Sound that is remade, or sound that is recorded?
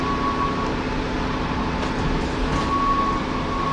recorded